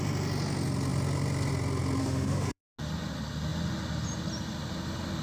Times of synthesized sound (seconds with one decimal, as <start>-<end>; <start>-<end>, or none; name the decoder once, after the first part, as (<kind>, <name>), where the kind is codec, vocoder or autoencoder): 2.0-2.6 (autoencoder, DAC-VAE)